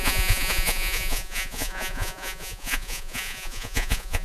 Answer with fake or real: fake